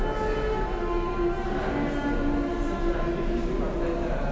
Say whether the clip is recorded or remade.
recorded